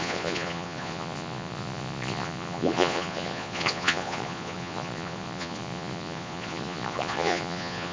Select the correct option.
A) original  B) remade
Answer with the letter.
B